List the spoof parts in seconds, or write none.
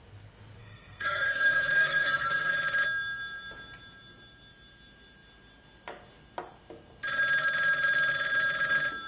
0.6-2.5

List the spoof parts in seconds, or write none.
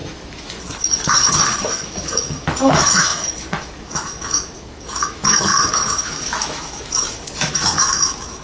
0.0-8.4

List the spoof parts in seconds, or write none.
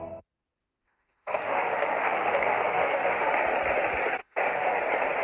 0.6-3.3; 4.2-4.8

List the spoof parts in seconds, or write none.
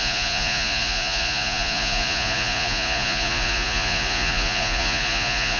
0.0-5.6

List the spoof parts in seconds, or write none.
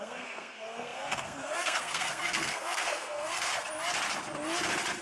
0.0-3.5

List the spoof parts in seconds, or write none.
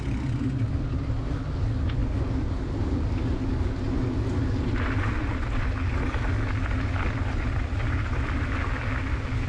none